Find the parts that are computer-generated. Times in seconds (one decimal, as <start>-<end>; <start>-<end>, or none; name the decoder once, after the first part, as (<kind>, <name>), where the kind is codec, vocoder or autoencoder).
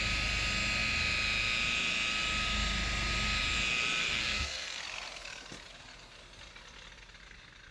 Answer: 4.0-4.8 (codec, SNAC)